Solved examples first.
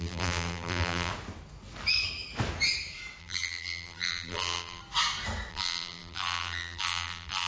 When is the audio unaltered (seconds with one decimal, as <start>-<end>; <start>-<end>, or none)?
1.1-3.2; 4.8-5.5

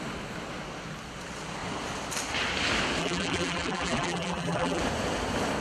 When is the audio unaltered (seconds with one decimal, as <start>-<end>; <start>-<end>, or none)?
0.0-3.0; 4.8-5.6

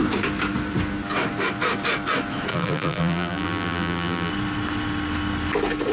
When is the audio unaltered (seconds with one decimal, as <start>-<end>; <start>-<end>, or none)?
0.0-2.5; 4.3-5.9

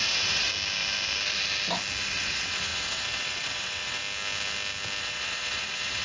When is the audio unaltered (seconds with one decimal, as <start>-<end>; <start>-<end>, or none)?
0.5-2.0; 4.0-5.0

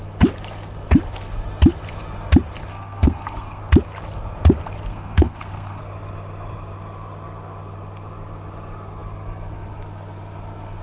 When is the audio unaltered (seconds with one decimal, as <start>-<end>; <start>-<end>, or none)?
0.0-2.7; 3.6-4.9; 5.8-10.8

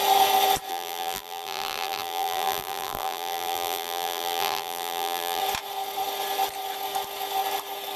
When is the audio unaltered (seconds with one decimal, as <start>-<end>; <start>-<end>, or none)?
0.0-0.7; 5.4-8.0

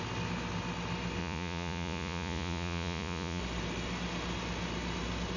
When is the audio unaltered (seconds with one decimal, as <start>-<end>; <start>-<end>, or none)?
0.0-1.2; 3.4-5.4